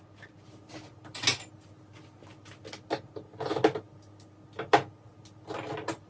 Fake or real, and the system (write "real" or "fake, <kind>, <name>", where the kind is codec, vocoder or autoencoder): real